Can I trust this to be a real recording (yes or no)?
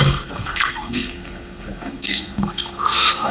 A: no